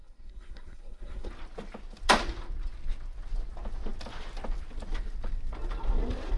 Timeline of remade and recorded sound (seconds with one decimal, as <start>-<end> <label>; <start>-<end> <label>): 0.0-1.3 remade; 1.3-6.4 recorded